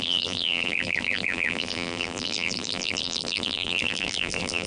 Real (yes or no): no